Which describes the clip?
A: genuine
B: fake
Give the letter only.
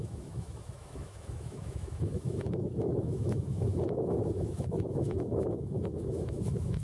B